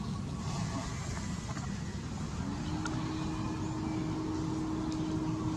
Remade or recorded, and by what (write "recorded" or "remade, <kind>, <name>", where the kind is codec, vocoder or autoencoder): recorded